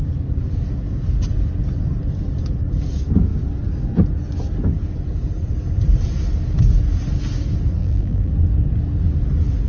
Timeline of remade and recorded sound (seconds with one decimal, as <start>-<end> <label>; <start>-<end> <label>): 0.0-7.8 recorded; 7.8-8.3 remade; 8.3-9.7 recorded